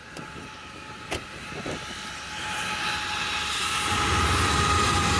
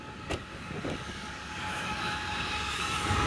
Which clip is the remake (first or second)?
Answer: second